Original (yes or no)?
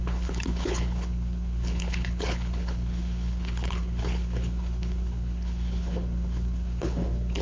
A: no